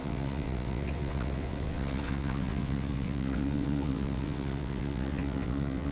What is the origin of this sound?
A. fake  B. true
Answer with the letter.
A